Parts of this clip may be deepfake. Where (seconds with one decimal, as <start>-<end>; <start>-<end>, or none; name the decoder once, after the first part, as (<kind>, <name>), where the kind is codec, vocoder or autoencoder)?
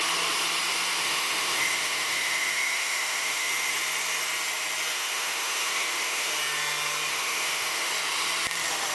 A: 1.0-3.5 (autoencoder, DAC-VAE); 4.9-6.3; 7.1-7.9